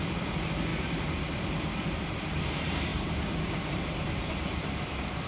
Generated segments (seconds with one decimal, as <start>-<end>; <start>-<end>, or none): 2.9-4.3

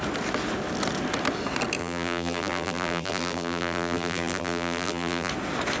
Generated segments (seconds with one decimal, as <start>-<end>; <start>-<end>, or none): 1.8-5.3

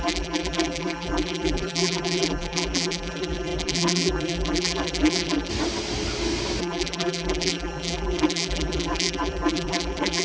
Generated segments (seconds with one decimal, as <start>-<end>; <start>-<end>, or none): 0.0-5.5; 6.6-10.2

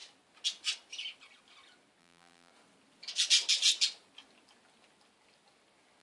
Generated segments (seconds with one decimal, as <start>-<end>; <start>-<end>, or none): 2.0-2.5

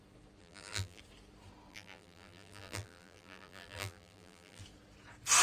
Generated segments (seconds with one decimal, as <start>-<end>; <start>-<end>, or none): 0.4-1.0; 1.7-4.6

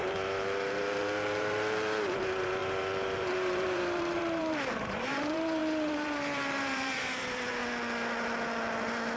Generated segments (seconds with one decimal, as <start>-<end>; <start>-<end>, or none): 0.0-7.6

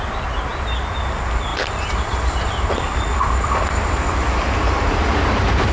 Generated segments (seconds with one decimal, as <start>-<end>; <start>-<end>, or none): 1.5-4.9